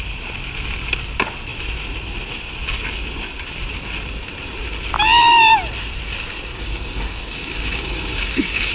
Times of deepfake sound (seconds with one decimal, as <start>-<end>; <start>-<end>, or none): 6.5-8.7

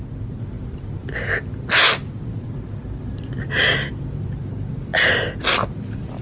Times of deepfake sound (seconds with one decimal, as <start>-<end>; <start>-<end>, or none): none

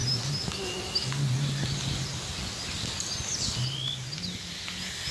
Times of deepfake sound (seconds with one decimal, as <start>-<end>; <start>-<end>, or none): none